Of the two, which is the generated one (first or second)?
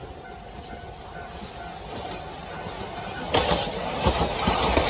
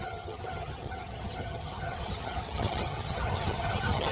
second